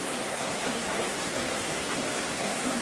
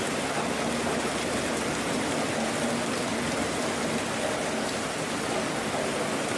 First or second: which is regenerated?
first